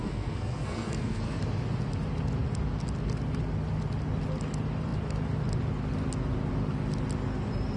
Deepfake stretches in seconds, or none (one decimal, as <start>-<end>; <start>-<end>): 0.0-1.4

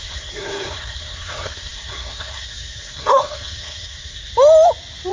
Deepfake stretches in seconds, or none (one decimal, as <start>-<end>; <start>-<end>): 0.0-4.3

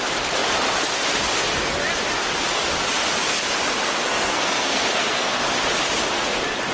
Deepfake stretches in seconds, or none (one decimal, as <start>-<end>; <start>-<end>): 4.1-5.5

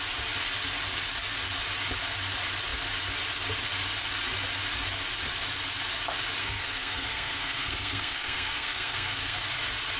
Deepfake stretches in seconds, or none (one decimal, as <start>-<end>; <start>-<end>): 6.4-9.4